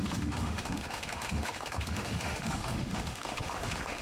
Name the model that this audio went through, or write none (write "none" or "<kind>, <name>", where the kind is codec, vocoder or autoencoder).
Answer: autoencoder, DAC-VAE